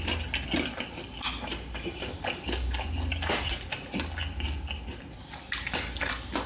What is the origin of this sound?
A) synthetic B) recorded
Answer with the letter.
B